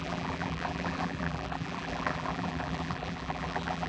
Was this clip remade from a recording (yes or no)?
yes